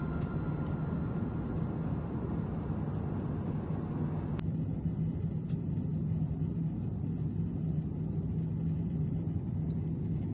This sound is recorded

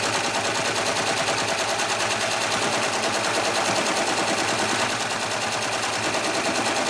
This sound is recorded